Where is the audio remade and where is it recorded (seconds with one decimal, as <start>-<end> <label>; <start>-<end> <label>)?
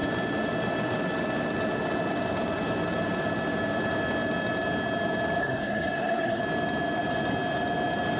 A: 0.0-5.4 recorded; 5.4-6.4 remade; 6.4-8.2 recorded